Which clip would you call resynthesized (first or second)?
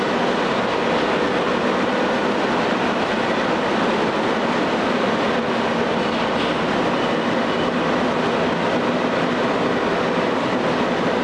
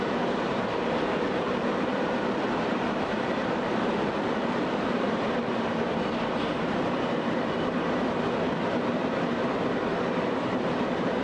second